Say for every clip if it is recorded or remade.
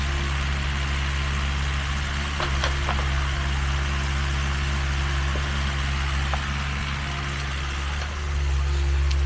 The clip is recorded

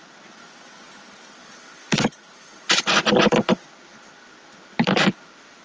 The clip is recorded